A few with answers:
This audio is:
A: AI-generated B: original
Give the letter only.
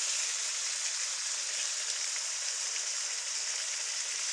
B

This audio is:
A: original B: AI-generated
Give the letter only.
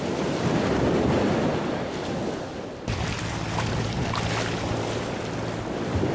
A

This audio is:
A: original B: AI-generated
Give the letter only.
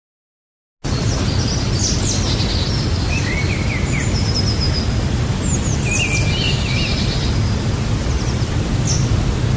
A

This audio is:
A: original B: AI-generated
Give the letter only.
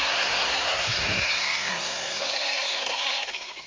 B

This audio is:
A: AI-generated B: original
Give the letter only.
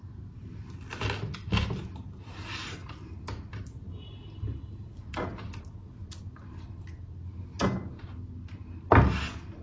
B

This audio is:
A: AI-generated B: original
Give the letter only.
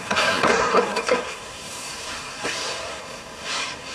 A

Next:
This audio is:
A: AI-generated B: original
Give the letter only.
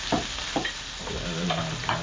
B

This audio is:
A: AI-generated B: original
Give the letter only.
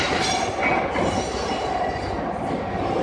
B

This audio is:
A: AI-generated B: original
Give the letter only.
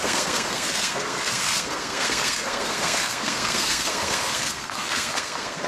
A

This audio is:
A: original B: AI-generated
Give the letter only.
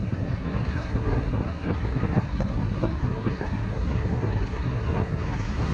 B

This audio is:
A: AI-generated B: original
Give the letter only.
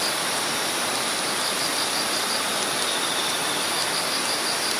B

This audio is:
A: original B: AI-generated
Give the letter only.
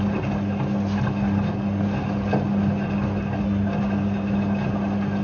A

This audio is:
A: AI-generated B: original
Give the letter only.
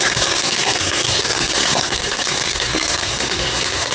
A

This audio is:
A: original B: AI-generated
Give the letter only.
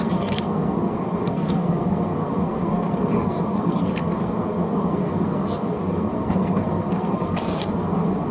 B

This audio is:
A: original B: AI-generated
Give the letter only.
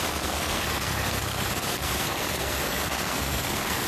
B